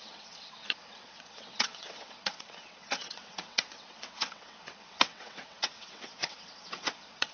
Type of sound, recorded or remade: remade